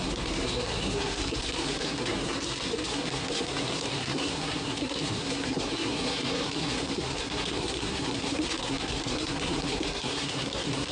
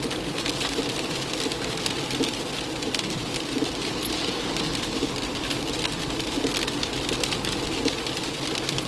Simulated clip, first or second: first